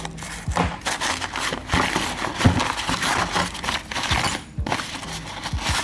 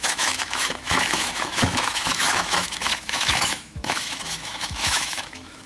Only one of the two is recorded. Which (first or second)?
first